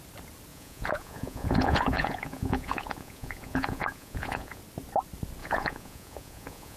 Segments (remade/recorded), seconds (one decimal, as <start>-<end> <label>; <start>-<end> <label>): 0.0-0.5 recorded; 0.5-4.6 remade; 4.6-5.4 recorded; 5.4-6.8 remade